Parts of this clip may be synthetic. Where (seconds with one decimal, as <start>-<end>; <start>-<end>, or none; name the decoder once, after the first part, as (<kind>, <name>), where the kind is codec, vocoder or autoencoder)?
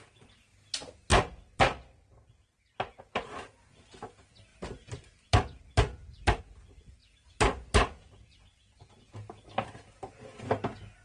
1.1-3.0 (vocoder, BigVGAN v2); 4.5-6.4; 7.0-9.0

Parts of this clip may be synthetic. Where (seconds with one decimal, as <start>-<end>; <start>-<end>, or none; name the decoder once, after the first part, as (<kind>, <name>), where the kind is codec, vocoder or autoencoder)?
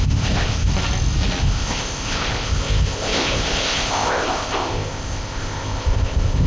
0.0-0.7 (codec, ZipCodec); 1.4-6.5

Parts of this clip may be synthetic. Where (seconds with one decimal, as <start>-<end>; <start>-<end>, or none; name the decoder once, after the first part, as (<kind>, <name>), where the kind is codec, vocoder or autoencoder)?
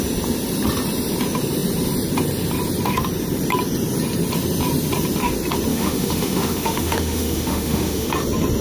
5.7-8.1 (autoencoder, DAC-VAE)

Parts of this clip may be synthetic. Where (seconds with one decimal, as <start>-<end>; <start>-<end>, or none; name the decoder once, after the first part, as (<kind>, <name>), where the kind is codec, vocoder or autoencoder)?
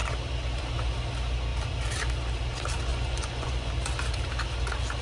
2.9-3.7 (vocoder, Vocos)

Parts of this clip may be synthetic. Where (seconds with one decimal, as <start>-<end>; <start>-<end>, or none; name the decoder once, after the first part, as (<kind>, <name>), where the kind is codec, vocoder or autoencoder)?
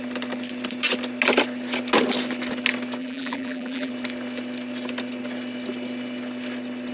3.0-3.9 (vocoder, BigVGAN v2)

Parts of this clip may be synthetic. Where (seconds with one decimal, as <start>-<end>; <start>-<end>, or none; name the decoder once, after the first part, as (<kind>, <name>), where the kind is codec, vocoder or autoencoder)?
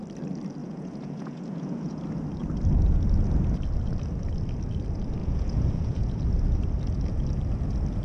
0.6-2.0 (vocoder, Vocos); 5.2-6.2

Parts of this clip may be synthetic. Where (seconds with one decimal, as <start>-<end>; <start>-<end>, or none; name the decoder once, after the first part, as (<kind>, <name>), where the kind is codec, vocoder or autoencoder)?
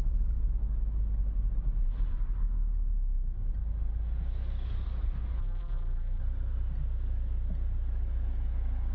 5.4-6.2 (vocoder, BigVGAN v2)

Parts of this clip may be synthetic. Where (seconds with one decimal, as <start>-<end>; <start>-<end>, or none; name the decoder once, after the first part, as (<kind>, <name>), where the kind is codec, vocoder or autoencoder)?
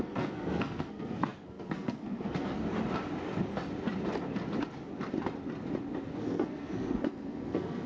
0.0-2.6 (codec, SNAC); 6.2-7.9